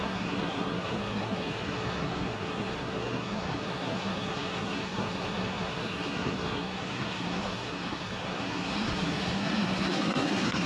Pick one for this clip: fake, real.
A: fake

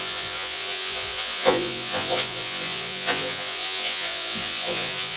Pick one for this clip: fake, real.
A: fake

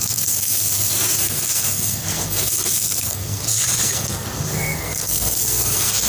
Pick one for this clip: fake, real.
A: fake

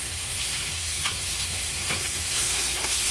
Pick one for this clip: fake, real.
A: fake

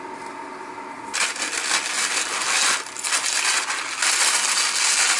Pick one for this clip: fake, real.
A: real